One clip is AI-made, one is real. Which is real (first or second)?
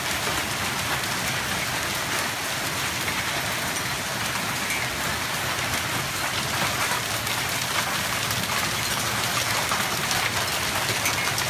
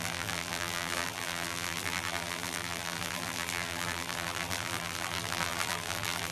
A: first